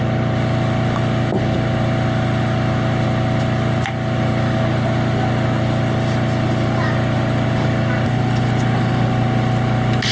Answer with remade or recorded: recorded